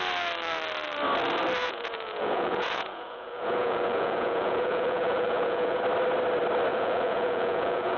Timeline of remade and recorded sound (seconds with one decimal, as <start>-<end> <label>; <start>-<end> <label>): 0.0-1.6 recorded; 1.6-5.8 remade; 5.8-6.7 recorded; 6.7-8.0 remade